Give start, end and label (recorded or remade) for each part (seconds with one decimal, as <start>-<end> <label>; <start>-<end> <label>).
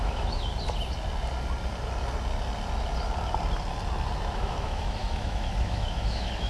0.0-0.5 remade; 0.5-4.3 recorded; 4.3-6.5 remade